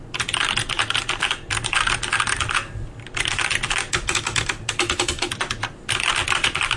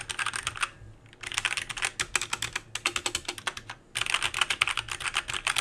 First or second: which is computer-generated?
first